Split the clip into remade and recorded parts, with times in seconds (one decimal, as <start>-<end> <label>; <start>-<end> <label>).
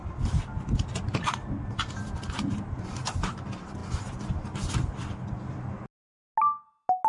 0.0-7.1 recorded